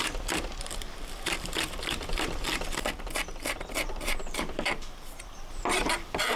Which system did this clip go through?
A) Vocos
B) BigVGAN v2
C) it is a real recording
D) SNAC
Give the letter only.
B